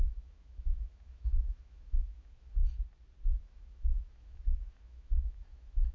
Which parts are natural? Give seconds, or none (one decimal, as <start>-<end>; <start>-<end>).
2.6-3.4